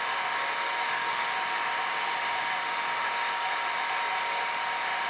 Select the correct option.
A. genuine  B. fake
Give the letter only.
B